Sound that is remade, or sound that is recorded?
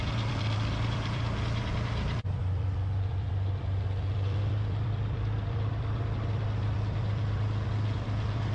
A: remade